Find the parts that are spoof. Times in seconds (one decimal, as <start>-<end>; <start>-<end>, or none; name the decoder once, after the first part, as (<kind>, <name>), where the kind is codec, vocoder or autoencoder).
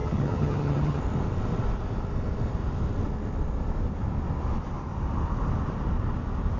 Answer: 0.0-1.0 (vocoder, HiFi-GAN)